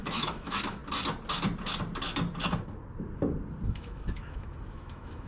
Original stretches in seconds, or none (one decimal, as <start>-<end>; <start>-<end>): 0.8-3.7